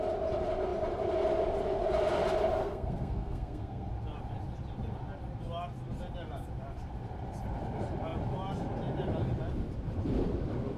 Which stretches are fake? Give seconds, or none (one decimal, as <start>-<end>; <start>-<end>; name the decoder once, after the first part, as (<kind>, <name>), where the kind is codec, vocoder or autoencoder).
2.6-3.9 (codec, SNAC)